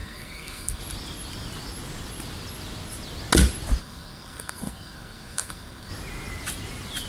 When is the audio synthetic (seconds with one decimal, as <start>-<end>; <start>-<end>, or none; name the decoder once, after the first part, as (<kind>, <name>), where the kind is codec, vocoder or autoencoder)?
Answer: 0.0-0.8 (codec, SNAC); 3.8-5.9